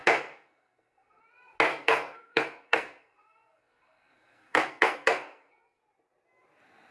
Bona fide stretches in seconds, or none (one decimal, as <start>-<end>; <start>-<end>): 1.2-1.7; 5.8-6.9